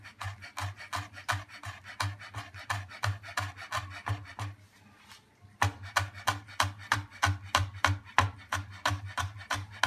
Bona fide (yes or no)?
yes